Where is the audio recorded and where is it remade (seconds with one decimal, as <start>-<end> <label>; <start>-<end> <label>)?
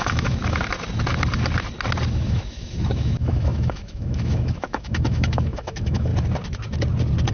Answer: 0.0-0.4 remade; 0.4-2.1 recorded; 2.1-6.1 remade; 6.1-7.3 recorded